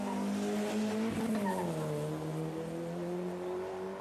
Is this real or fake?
real